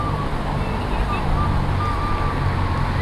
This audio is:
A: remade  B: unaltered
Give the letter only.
B